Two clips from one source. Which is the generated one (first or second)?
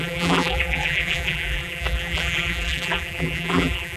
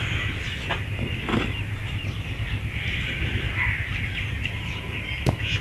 first